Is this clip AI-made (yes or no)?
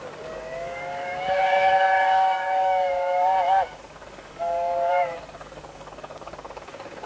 yes